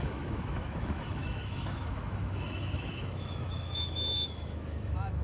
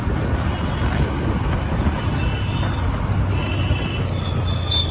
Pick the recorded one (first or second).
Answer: second